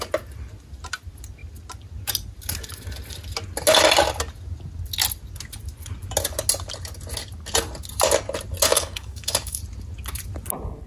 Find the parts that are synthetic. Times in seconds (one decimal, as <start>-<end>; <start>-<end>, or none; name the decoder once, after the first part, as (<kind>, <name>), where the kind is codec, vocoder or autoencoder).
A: 8.7-9.6 (codec, DAC)

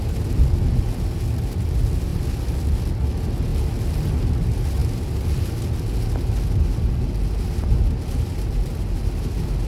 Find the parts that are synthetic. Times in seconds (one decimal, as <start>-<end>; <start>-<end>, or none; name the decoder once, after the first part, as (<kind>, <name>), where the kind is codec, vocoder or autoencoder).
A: none

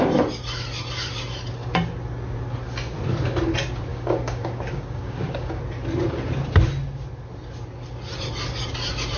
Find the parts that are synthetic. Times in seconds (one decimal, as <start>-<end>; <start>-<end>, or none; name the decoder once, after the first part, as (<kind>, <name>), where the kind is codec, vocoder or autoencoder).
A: 3.9-5.6 (codec, DAC)

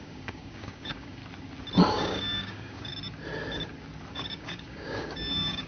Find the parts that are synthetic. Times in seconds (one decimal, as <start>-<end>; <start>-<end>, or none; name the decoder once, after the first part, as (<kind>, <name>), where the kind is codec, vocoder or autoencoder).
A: 0.0-1.2 (codec, DAC); 1.9-2.9; 4.1-5.7

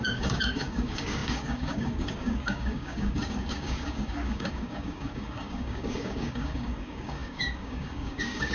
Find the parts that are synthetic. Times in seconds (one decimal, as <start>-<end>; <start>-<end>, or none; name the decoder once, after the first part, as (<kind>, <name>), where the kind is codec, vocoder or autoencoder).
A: 0.0-8.5 (codec, DAC)

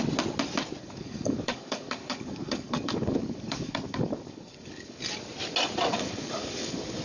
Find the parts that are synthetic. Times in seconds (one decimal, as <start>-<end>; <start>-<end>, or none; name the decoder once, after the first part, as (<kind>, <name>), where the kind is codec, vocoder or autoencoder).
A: 0.8-5.0 (codec, DAC); 5.9-7.0

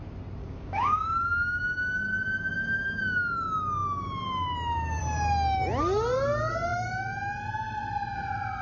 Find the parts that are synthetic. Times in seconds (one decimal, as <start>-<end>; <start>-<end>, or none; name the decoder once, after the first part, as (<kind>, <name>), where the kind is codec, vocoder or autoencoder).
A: 0.4-2.0 (codec, DAC)